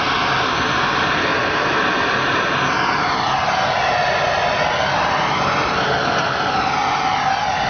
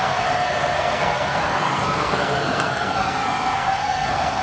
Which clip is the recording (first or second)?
first